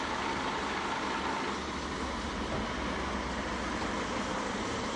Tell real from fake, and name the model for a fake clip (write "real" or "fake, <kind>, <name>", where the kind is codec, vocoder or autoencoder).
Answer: real